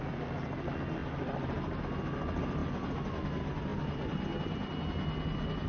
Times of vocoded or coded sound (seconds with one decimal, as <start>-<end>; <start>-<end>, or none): 1.0-1.8; 3.7-4.8